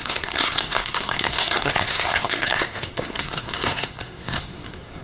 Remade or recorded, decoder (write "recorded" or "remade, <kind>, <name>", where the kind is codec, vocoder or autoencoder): remade, codec, SNAC